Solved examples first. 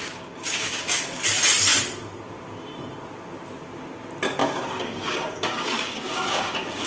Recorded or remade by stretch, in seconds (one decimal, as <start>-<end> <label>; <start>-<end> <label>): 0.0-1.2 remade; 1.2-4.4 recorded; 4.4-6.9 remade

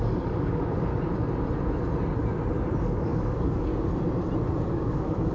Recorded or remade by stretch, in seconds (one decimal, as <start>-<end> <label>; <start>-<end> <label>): 0.0-0.9 remade; 0.9-2.8 recorded; 2.8-3.7 remade; 3.7-4.7 recorded; 4.7-5.3 remade

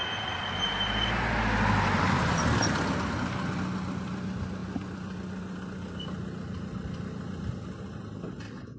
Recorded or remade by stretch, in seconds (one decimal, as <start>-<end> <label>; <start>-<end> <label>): 0.0-8.8 recorded

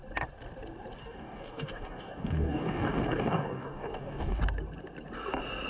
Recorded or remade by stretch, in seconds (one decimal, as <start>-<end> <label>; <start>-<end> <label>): 0.0-1.0 recorded; 1.0-4.4 remade; 4.4-5.7 recorded